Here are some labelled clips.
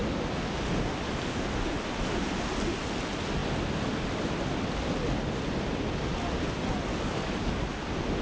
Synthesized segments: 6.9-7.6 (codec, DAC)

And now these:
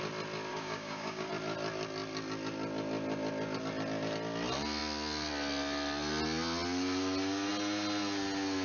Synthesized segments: 0.5-1.3 (codec, DAC)

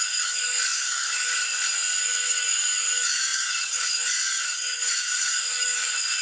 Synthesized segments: 0.0-1.4 (codec, DAC); 2.0-6.2

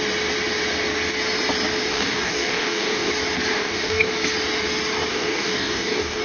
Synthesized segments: 1.9-3.1 (codec, DAC); 3.5-4.1; 5.1-6.2

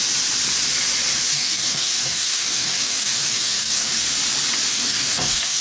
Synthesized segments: 1.3-4.0 (codec, DAC); 4.7-5.6

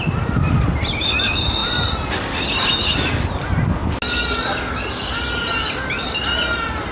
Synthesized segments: none